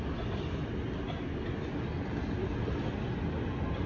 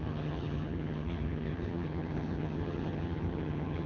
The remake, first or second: second